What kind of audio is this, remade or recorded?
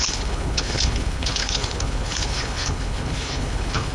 remade